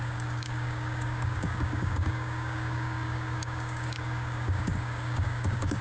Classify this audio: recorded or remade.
remade